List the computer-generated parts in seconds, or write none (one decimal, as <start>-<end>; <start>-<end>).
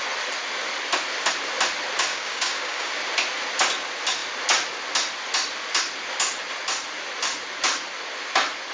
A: 2.1-2.9